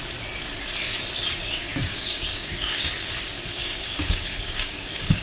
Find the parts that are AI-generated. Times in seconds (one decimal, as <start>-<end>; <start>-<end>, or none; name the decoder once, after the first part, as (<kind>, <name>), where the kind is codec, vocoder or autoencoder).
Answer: 1.4-2.9 (codec, DAC); 3.6-5.2